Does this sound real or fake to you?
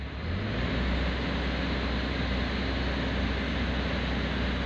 real